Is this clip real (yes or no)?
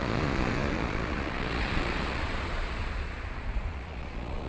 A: no